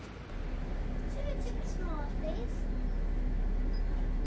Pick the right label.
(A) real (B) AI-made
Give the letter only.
A